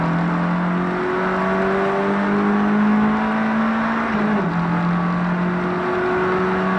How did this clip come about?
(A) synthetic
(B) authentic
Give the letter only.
B